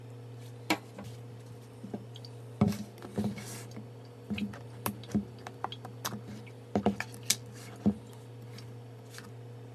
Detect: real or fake real